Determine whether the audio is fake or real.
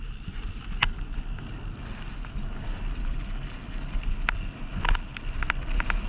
real